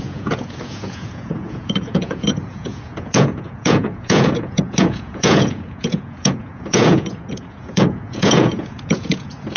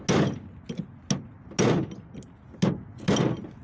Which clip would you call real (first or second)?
second